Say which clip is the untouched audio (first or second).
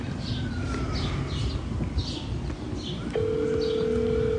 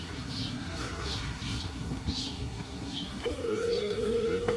first